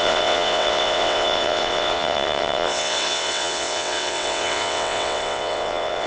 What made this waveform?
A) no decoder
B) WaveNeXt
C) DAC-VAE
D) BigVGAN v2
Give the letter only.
B